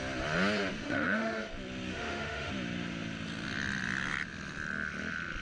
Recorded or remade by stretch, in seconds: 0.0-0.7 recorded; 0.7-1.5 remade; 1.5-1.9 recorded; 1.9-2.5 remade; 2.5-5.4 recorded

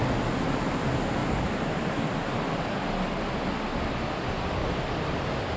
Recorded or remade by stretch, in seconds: 0.0-5.6 recorded

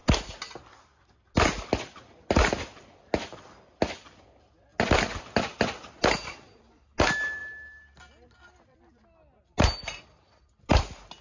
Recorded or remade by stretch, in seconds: 0.0-11.2 recorded

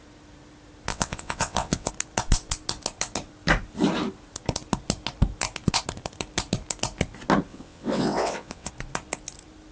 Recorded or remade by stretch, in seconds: 0.0-0.9 recorded; 0.9-1.9 remade; 1.9-7.5 recorded; 7.5-8.7 remade; 8.7-9.7 recorded

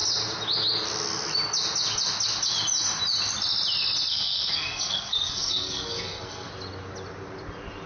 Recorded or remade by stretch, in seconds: 0.0-4.1 recorded; 4.1-6.5 remade; 6.5-7.9 recorded

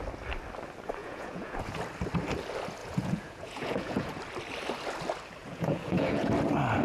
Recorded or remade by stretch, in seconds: 0.0-1.0 recorded; 1.0-1.8 remade; 1.8-2.8 recorded; 2.8-4.2 remade; 4.2-5.4 recorded; 5.4-6.3 remade; 6.3-6.8 recorded

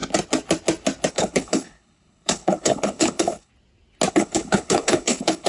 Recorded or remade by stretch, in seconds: 0.0-1.1 recorded; 1.1-3.5 remade; 3.5-4.1 recorded; 4.1-5.5 remade

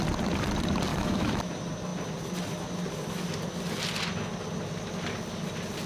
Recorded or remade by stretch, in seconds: 0.0-0.9 recorded; 0.9-1.5 remade; 1.5-5.9 recorded